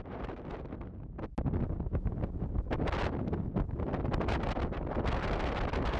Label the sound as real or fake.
real